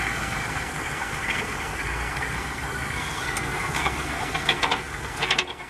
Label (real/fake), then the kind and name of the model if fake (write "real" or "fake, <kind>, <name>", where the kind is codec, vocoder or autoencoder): fake, codec, SNAC